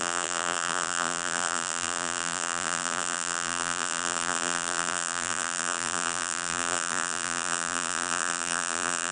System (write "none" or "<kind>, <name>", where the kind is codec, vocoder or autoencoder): vocoder, BigVGAN v2